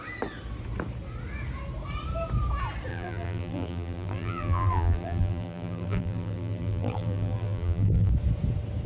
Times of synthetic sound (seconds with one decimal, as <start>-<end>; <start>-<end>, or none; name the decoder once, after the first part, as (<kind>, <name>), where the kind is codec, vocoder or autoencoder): 2.9-8.1 (vocoder, BigVGAN v2)